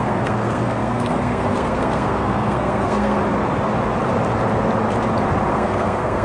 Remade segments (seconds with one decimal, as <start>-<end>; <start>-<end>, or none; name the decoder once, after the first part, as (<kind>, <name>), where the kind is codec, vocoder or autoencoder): 0.0-3.2 (codec, SNAC); 5.5-6.2